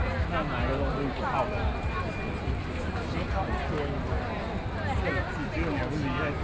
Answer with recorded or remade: recorded